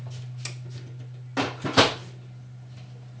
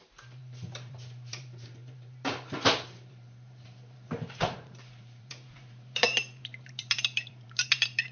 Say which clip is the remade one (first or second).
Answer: second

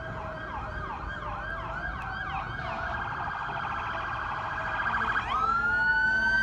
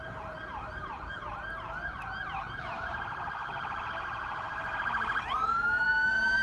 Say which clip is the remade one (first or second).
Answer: second